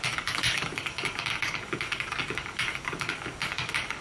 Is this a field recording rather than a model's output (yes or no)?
no